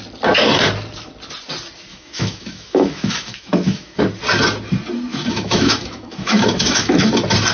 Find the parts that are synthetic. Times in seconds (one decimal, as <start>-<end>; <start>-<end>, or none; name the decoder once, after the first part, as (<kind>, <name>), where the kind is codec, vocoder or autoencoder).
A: 1.9-4.0 (autoencoder, DAC-VAE); 5.1-7.1